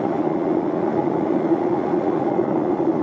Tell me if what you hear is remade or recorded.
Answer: remade